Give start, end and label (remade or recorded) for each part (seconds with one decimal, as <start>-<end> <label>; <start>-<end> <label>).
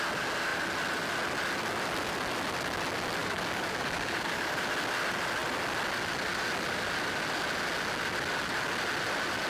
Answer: 0.0-3.2 recorded; 3.2-4.6 remade; 4.6-9.5 recorded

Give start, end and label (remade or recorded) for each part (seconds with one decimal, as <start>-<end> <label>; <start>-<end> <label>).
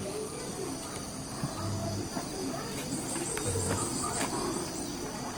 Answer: 0.0-1.8 recorded; 1.8-4.2 remade; 4.2-5.4 recorded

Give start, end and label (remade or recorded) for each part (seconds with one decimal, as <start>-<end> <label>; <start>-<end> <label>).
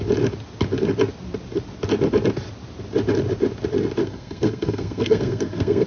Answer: 0.0-4.0 recorded; 4.0-5.9 remade